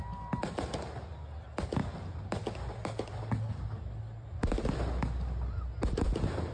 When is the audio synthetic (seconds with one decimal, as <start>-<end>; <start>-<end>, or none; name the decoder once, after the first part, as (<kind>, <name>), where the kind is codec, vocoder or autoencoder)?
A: none